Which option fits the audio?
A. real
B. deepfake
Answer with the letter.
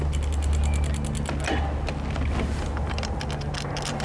A